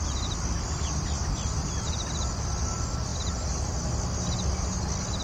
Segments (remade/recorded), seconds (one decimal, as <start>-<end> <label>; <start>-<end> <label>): 0.0-3.1 recorded; 3.1-3.7 remade; 3.7-5.2 recorded